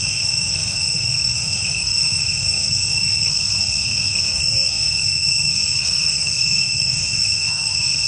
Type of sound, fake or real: fake